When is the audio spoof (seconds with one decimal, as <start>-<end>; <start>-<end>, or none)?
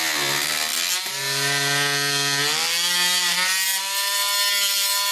none